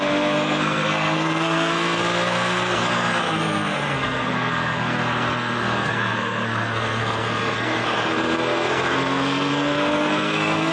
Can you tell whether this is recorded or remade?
remade